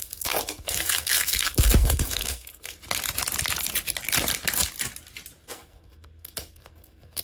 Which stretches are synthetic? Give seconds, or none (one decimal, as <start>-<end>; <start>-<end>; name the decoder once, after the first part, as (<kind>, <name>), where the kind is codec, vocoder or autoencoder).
0.0-2.8 (codec, SNAC); 5.5-7.2